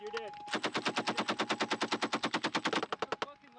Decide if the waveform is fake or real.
real